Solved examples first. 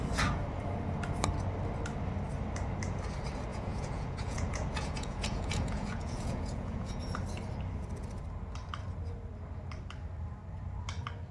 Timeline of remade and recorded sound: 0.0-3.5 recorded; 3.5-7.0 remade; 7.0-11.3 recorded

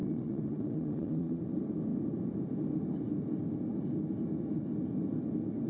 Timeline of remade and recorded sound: 0.0-1.4 remade; 1.4-5.7 recorded

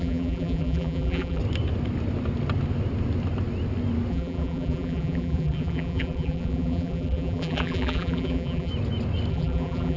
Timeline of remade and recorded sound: 0.0-1.4 remade; 1.4-4.1 recorded; 4.1-8.7 remade; 8.7-9.3 recorded; 9.3-10.0 remade

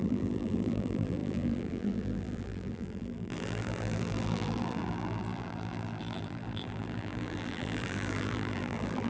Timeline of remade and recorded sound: 0.0-9.1 remade

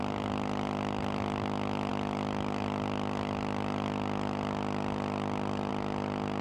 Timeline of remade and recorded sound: 0.0-6.4 recorded